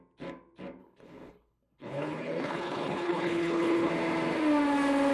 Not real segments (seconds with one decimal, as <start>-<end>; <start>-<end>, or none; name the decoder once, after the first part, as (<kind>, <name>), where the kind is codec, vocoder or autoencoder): 0.8-3.9 (codec, HILCodec)